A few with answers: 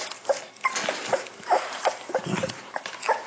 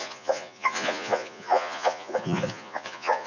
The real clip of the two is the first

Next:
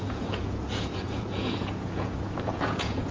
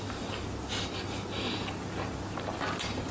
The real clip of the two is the second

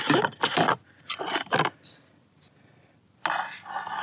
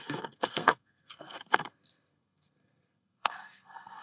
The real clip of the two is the first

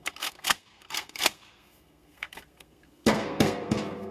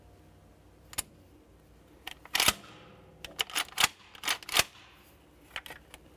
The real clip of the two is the second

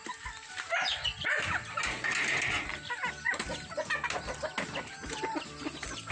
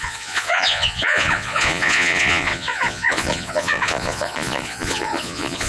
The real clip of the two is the first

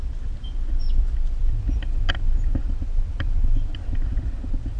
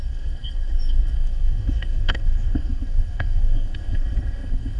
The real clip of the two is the first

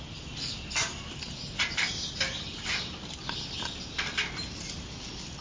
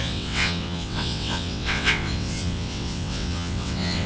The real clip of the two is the first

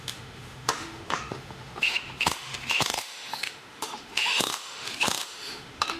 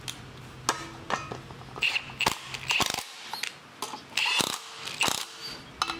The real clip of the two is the second